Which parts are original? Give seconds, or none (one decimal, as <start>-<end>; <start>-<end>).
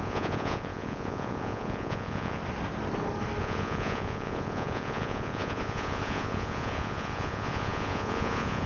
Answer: 2.4-3.4